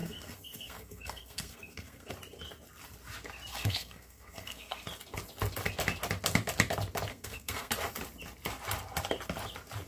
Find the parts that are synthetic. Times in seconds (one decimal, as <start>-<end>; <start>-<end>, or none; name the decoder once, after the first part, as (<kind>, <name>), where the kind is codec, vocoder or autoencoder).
0.0-2.1 (codec, SNAC); 3.5-4.8; 7.1-7.7